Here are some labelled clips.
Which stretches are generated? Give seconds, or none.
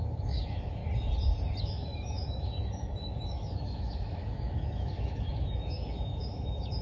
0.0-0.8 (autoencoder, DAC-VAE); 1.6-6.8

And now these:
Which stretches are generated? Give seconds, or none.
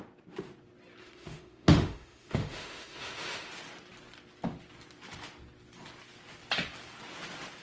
1.0-3.5 (autoencoder, DAC-VAE)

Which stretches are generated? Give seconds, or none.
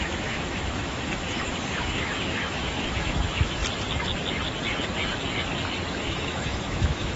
0.0-3.6 (autoencoder, DAC-VAE); 5.9-7.2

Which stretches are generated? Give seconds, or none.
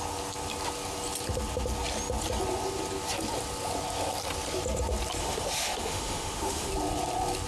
5.2-6.7 (autoencoder, DAC-VAE)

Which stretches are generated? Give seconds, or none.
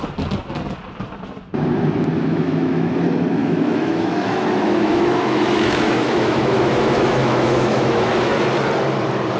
2.3-2.9 (autoencoder, DAC-VAE); 3.4-8.1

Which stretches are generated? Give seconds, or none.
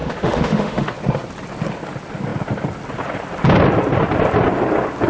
0.0-0.9 (autoencoder, DAC-VAE)